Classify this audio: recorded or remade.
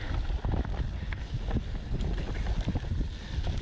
recorded